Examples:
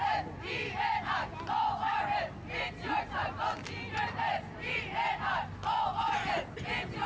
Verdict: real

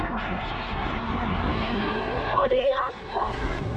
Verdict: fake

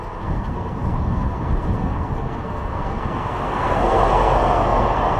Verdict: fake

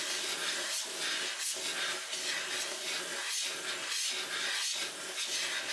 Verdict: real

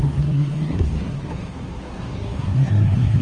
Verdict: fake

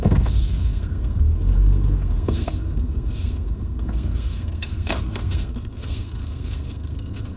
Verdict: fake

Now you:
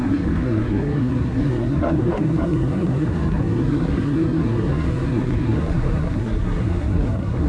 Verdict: fake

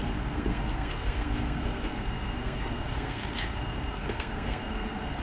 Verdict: fake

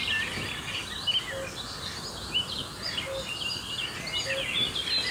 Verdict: real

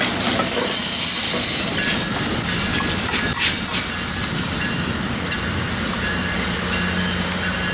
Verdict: real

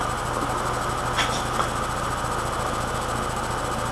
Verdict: real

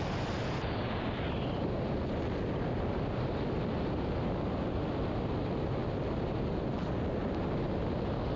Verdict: real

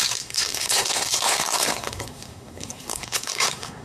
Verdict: fake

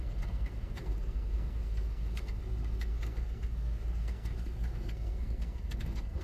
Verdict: fake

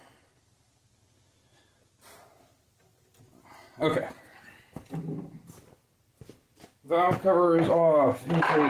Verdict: real